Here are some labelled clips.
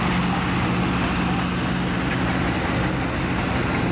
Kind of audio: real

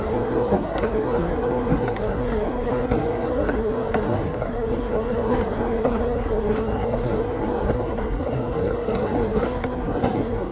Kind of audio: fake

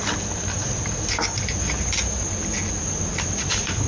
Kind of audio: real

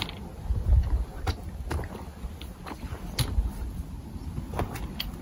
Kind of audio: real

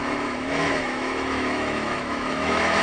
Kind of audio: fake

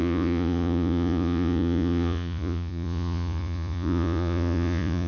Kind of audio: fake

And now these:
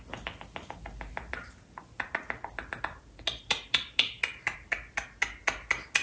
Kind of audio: real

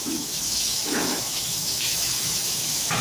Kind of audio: fake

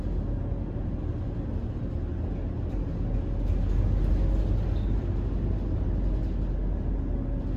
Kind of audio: real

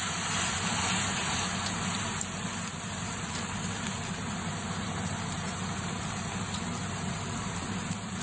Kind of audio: fake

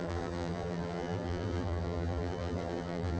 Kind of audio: fake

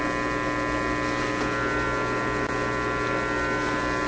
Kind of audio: real